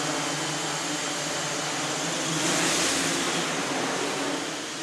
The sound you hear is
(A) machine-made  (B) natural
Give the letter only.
B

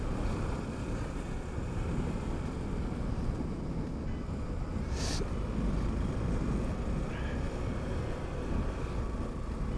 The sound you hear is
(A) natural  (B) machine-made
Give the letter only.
A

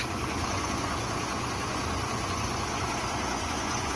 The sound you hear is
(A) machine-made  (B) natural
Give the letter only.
A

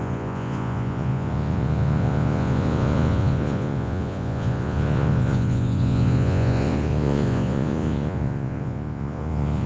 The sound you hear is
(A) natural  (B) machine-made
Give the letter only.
B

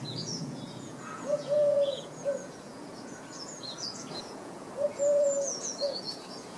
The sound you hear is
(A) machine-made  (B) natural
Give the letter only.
A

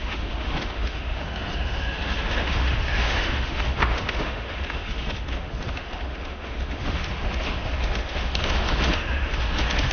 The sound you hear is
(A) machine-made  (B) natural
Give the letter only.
A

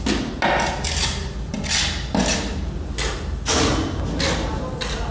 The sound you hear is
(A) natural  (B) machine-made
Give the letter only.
A